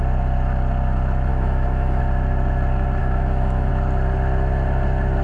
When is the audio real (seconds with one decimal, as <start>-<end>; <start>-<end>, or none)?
0.0-1.3; 2.0-3.0; 3.7-5.2